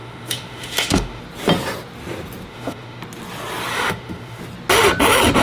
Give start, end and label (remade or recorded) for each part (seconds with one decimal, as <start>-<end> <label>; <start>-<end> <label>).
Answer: 0.0-1.2 remade; 1.2-2.5 recorded; 2.5-3.0 remade; 3.0-3.7 recorded; 3.7-4.4 remade; 4.4-5.4 recorded